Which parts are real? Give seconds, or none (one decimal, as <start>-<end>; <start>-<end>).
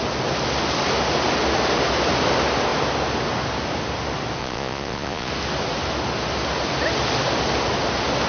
0.0-4.4; 5.3-8.3